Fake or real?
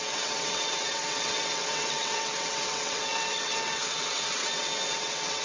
fake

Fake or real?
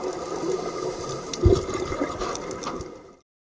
real